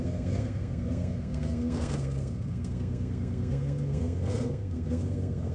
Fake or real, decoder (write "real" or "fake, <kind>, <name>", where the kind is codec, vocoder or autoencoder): fake, codec, SNAC